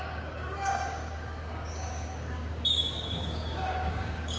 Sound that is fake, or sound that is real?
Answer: fake